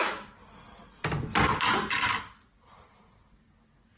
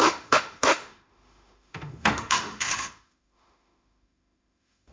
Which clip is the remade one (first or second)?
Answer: second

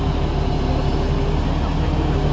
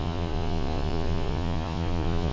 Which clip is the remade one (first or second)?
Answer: second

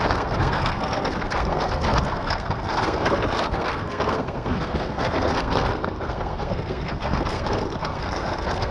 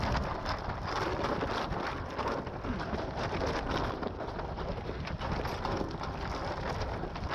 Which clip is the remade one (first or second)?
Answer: first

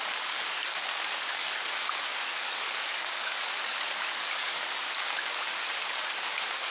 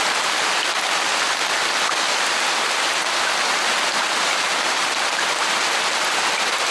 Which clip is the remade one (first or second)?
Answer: first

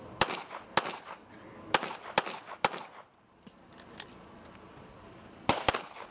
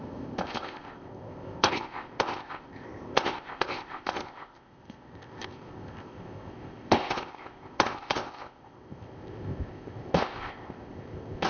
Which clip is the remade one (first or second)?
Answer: second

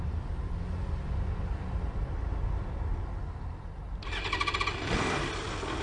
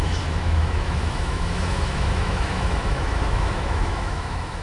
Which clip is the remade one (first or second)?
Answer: second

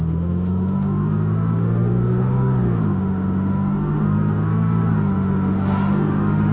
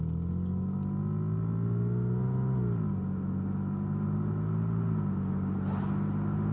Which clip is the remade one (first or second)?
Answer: first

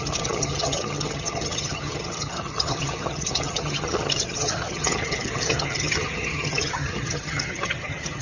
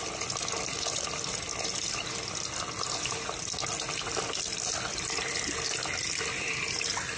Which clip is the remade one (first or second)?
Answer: first